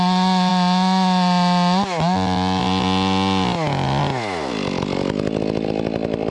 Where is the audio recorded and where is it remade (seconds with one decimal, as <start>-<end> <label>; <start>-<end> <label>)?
0.0-6.3 recorded